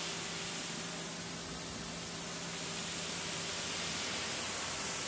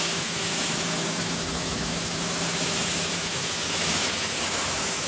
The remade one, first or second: second